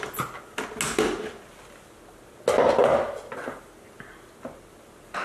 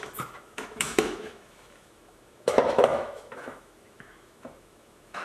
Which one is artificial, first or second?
second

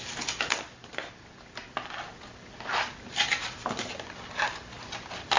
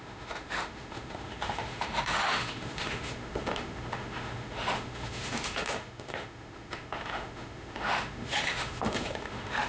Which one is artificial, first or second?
second